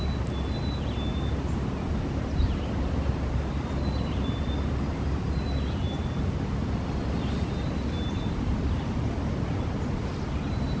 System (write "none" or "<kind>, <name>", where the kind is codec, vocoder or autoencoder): none